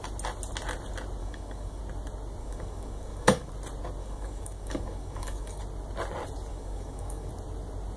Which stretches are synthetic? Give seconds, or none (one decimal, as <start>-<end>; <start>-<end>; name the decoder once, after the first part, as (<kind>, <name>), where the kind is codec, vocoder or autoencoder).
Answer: 1.2-1.8 (codec, DAC); 2.4-3.5; 4.0-5.6; 6.5-7.3